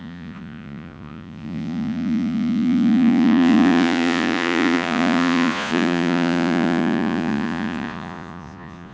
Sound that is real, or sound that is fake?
fake